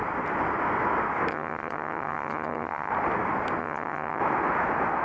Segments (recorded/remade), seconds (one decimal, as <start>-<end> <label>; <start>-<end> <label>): 0.0-1.3 recorded; 1.3-2.9 remade; 2.9-3.6 recorded; 3.6-4.2 remade; 4.2-5.0 recorded